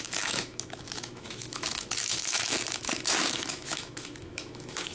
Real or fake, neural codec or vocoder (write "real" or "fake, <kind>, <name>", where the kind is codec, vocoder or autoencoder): fake, autoencoder, DAC-VAE